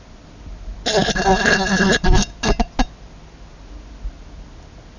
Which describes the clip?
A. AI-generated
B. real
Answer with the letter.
B